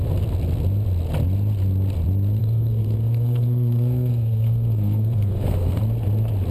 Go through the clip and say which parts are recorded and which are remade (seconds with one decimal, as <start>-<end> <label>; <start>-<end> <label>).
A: 0.0-2.4 recorded; 2.4-5.8 remade; 5.8-6.5 recorded